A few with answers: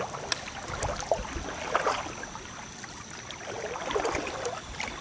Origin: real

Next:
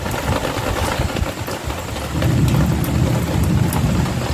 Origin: real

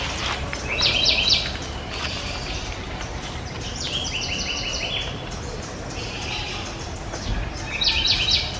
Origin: real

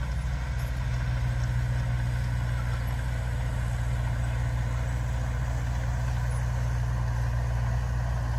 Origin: real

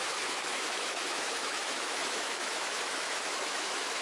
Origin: fake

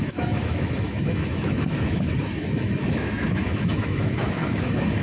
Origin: fake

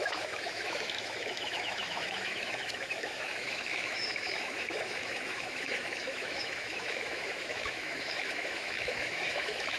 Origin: fake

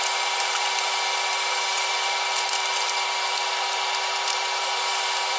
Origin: real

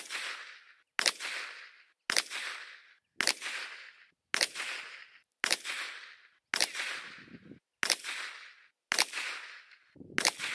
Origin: real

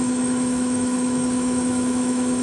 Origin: fake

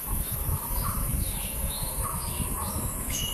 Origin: fake